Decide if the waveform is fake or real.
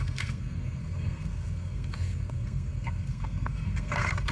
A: fake